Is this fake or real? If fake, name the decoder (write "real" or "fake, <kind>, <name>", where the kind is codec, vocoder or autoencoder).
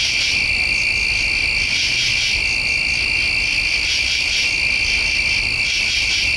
real